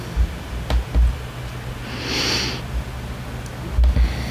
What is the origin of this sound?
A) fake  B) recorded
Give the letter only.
B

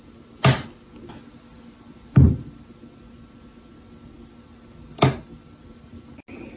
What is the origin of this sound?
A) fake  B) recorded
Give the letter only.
B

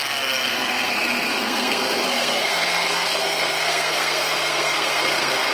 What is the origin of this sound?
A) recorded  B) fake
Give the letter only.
B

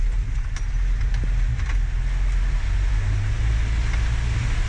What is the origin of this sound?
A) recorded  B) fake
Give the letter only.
A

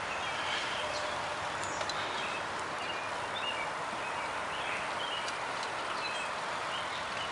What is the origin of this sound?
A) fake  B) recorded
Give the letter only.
B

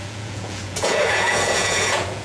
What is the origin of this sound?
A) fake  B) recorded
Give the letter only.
A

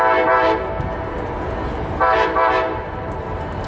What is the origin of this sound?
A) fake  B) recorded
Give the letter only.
B